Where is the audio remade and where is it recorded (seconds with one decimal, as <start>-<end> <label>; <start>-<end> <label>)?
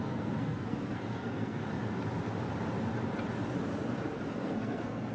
0.0-1.6 remade; 1.6-4.4 recorded; 4.4-5.1 remade